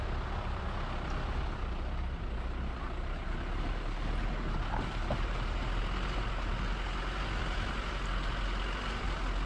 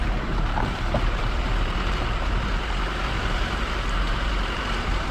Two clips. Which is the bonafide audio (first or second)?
first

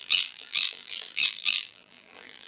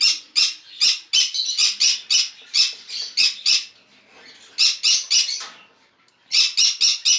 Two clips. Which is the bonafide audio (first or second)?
second